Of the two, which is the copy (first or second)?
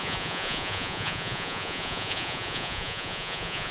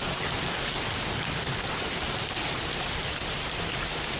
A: first